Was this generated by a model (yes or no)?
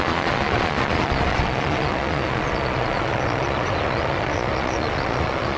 yes